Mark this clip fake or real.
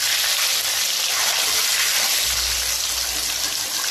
real